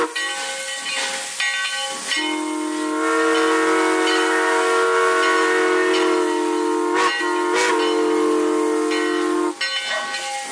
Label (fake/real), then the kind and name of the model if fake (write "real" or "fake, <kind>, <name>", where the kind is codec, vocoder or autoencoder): real